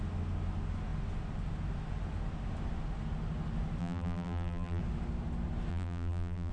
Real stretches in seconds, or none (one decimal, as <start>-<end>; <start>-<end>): 0.0-3.8; 4.8-5.7